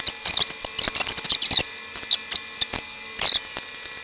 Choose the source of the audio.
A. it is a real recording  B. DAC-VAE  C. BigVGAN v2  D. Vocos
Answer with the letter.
A